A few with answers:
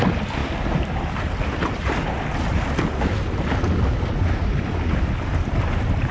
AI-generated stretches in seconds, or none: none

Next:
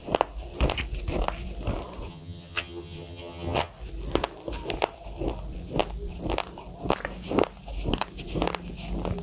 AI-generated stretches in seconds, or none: 2.1-3.7 (vocoder, HiFi-GAN)

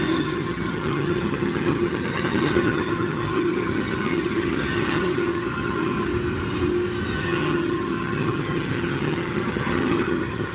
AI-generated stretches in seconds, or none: 0.0-6.1 (vocoder, HiFi-GAN); 7.1-10.5

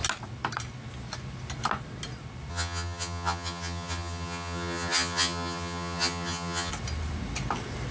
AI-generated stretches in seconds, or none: 2.5-6.7 (vocoder, HiFi-GAN)

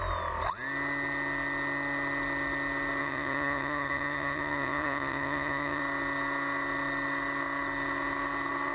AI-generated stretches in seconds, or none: 3.0-5.8 (vocoder, HiFi-GAN)